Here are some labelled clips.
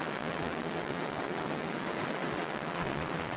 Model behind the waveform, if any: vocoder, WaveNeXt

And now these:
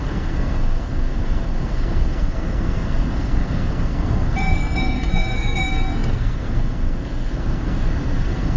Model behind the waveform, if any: codec, SNAC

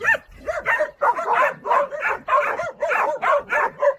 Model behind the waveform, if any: vocoder, BigVGAN v2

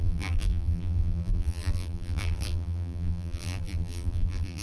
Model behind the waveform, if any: vocoder, BigVGAN v2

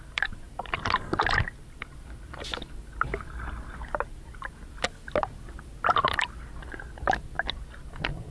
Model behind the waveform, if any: none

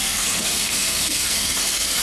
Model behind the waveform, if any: codec, SNAC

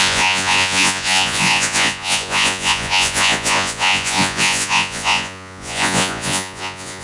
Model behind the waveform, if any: vocoder, Vocos